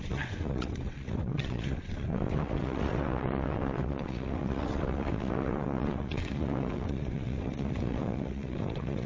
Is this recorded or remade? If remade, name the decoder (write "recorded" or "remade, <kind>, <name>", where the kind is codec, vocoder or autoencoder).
remade, vocoder, WaveNeXt